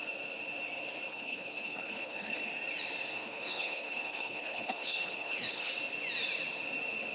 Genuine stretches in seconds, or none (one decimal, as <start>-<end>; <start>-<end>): 0.0-1.1; 2.5-3.1; 5.7-7.1